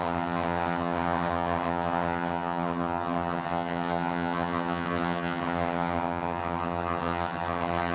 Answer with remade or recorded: remade